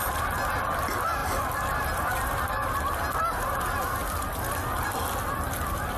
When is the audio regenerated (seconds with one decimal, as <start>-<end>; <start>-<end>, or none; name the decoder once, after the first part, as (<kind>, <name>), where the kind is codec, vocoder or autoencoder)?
1.2-3.2 (vocoder, BigVGAN v2)